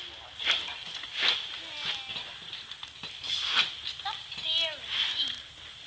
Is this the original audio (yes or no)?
yes